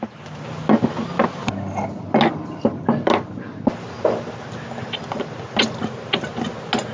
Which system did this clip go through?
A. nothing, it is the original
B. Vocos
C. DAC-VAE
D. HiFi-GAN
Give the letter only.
A